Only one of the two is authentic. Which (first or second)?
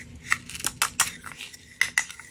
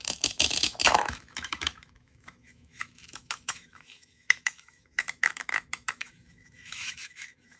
first